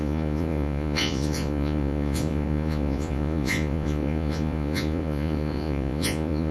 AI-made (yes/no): yes